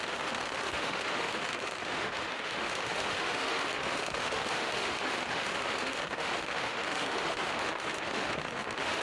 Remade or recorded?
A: remade